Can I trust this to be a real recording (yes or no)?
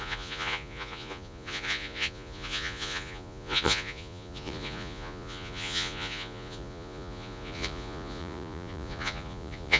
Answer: no